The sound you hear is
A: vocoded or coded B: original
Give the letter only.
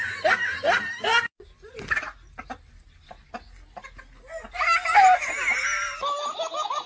B